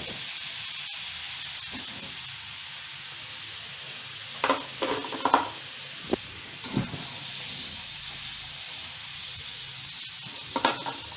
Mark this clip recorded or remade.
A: recorded